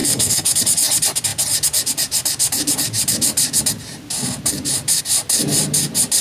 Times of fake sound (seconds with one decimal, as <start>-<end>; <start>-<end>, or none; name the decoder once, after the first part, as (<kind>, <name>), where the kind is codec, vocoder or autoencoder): 0.0-0.6 (codec, SNAC)